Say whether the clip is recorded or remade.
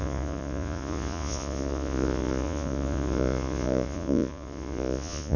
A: remade